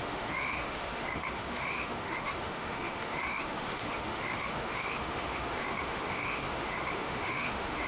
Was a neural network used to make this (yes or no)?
yes